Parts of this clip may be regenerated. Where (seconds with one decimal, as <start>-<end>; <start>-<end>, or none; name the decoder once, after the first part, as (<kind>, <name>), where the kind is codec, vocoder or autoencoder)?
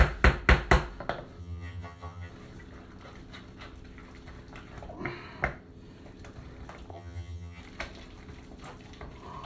1.4-2.3 (vocoder, HiFi-GAN); 6.9-7.6